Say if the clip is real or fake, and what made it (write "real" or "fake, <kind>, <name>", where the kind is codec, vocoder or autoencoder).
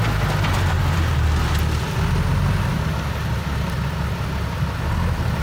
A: real